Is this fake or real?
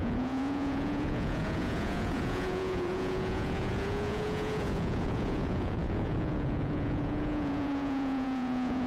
fake